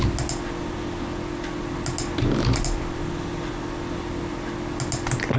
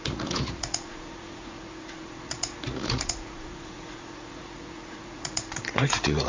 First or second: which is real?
first